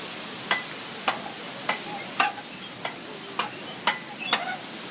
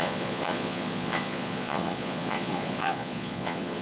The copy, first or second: second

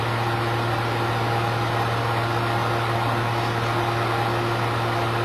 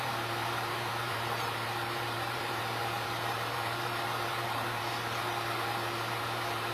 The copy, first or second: second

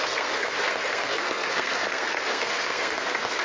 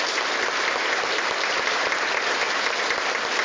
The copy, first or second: first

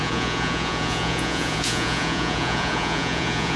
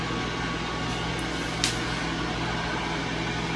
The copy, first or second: first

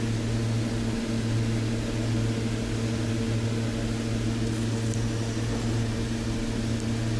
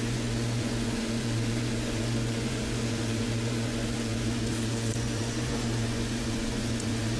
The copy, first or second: second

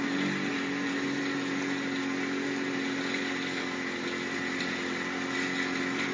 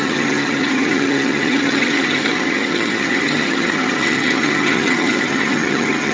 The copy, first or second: second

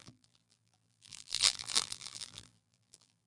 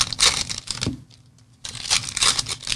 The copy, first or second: first